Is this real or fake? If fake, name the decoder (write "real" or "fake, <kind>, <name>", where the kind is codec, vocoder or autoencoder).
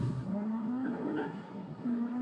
fake, codec, SNAC